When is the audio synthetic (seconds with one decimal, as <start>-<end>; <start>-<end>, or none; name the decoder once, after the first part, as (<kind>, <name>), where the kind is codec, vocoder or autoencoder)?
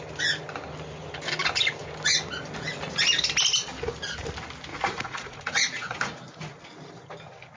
4.7-6.6 (vocoder, Vocos)